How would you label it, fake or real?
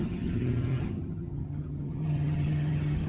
fake